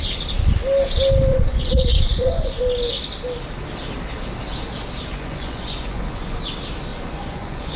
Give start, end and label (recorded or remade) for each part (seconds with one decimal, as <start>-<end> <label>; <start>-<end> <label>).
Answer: 0.0-1.3 recorded; 1.3-2.6 remade; 2.6-5.1 recorded; 5.1-6.4 remade; 6.4-6.9 recorded; 6.9-7.8 remade